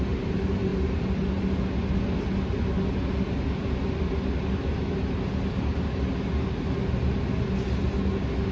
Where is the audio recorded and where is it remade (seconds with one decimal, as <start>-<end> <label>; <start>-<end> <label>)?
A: 0.0-8.5 recorded